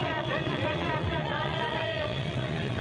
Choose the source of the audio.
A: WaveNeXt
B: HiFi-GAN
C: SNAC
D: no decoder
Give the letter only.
A